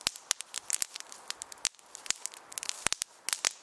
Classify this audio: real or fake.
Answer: real